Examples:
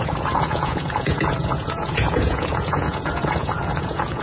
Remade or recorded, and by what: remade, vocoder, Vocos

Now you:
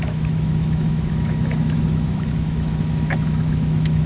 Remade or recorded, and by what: remade, autoencoder, DAC-VAE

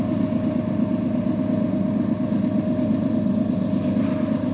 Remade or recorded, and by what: recorded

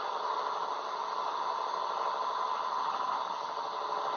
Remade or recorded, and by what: recorded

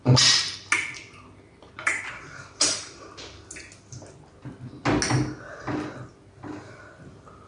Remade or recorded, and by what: recorded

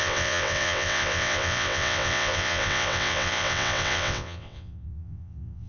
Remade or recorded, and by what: remade, vocoder, WaveNeXt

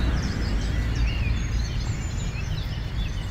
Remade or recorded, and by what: recorded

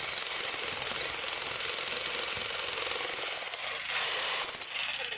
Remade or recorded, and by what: recorded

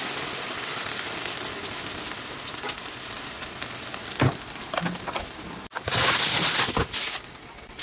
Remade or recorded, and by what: recorded